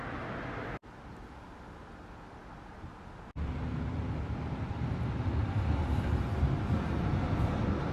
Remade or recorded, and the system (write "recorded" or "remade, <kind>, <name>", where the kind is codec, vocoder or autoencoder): recorded